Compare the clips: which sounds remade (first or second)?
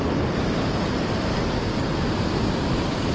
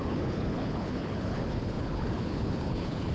second